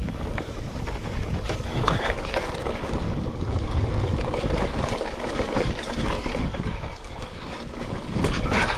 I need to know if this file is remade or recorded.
remade